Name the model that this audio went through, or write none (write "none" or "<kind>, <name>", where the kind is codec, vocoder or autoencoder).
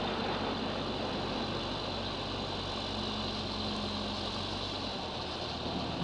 none